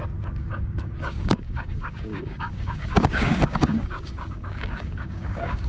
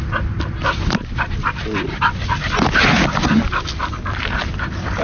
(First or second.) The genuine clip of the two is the second